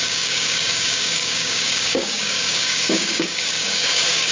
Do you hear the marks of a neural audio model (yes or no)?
yes